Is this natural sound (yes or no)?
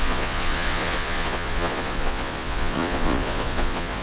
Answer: no